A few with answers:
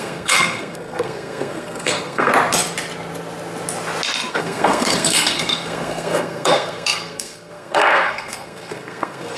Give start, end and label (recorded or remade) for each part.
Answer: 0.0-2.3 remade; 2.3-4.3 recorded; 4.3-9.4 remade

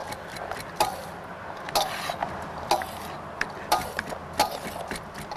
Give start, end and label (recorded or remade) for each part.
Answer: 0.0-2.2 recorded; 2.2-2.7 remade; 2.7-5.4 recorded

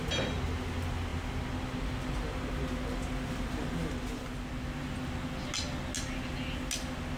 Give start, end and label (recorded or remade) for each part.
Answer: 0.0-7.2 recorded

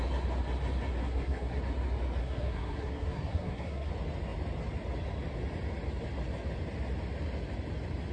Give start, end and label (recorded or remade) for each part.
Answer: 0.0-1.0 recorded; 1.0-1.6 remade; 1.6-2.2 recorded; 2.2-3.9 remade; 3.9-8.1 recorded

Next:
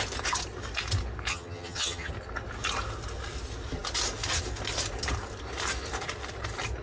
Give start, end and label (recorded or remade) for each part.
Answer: 0.0-1.3 recorded; 1.3-2.1 remade; 2.1-6.8 recorded

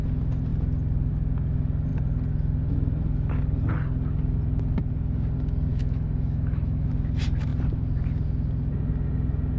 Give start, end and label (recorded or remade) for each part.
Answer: 0.0-5.7 recorded; 5.7-6.9 remade; 6.9-9.6 recorded